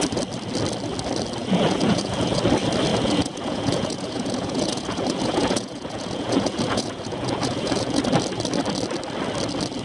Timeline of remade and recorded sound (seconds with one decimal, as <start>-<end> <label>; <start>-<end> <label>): 0.0-1.4 recorded; 1.4-2.4 remade; 2.4-2.9 recorded; 2.9-8.0 remade; 8.0-9.8 recorded